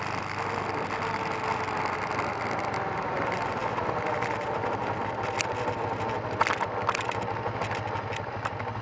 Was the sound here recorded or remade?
recorded